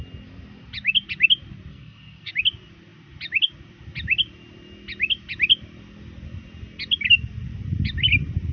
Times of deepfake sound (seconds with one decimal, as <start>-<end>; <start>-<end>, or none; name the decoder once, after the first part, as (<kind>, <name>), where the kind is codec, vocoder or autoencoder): 1.7-2.3 (codec, SNAC)